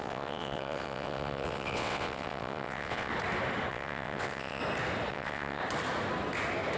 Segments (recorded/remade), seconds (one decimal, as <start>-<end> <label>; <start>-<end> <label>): 0.0-3.1 remade; 3.1-3.7 recorded; 3.7-4.6 remade; 4.6-5.1 recorded; 5.1-5.6 remade; 5.6-6.8 recorded